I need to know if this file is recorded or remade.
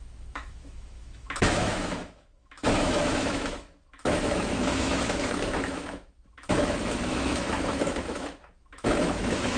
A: remade